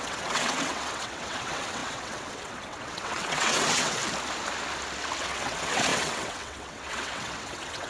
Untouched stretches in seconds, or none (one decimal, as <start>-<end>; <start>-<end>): 4.0-5.2